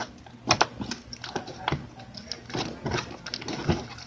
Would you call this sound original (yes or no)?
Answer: yes